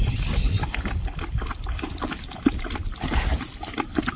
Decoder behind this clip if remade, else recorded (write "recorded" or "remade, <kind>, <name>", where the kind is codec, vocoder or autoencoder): recorded